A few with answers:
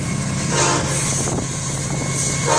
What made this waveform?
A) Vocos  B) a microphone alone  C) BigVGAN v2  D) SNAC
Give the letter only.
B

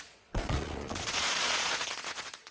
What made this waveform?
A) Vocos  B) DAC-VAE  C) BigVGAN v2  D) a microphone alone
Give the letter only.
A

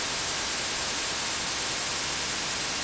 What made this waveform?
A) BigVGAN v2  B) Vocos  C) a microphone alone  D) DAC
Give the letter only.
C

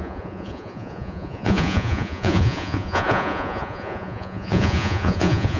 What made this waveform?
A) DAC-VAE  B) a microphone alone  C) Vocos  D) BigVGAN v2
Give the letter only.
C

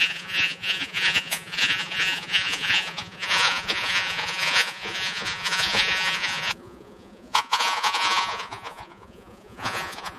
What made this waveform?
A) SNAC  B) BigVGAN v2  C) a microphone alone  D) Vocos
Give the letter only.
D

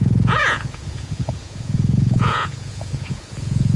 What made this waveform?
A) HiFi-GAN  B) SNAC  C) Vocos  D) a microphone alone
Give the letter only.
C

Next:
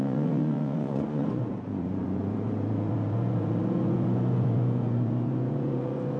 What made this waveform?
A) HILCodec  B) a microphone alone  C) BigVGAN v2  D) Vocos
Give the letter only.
D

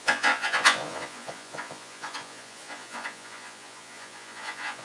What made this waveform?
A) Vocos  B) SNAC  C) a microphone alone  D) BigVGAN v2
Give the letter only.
A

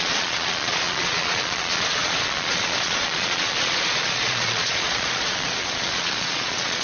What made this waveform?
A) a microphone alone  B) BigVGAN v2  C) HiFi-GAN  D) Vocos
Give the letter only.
D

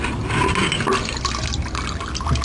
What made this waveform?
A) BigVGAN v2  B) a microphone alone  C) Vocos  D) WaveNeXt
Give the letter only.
B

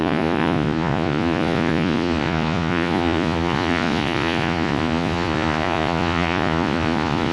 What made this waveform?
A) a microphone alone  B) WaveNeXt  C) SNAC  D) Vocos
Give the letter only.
D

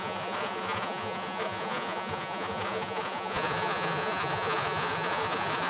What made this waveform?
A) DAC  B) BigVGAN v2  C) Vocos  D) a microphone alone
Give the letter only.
C